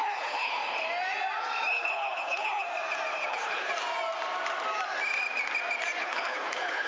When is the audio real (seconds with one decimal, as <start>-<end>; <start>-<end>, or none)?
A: 0.6-1.7; 2.7-3.3; 3.7-6.0